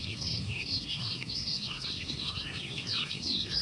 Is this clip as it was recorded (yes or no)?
no